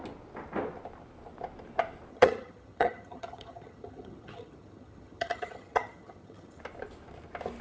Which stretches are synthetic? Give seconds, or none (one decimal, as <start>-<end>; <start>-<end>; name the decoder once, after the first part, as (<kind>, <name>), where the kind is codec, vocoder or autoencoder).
2.1-6.6 (vocoder, HiFi-GAN)